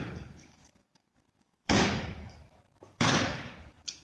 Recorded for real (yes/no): no